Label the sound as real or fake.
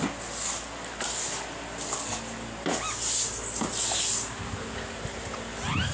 real